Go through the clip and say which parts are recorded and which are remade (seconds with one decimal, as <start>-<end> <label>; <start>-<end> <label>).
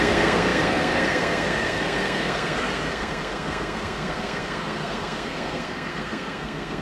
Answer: 0.0-6.8 remade